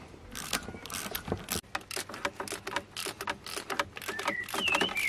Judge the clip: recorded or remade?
recorded